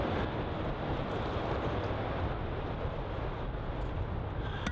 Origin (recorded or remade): recorded